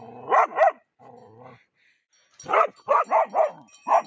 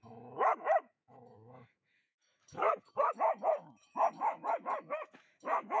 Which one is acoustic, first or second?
first